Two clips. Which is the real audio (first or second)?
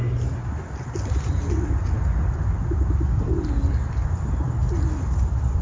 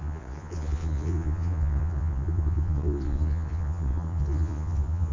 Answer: first